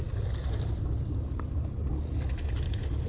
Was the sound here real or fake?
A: real